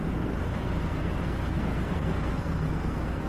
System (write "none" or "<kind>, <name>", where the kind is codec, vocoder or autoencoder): codec, SNAC